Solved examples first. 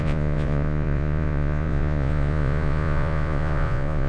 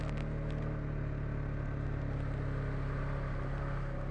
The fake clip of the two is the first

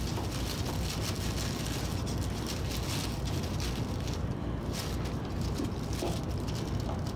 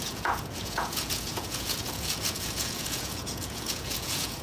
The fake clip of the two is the second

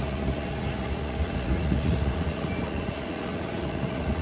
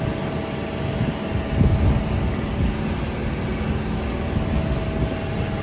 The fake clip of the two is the first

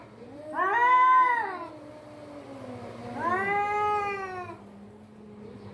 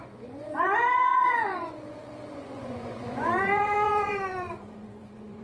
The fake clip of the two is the second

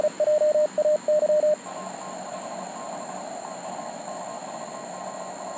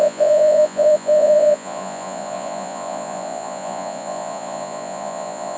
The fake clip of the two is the second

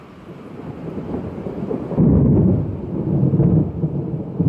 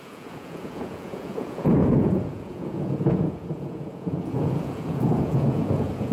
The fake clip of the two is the second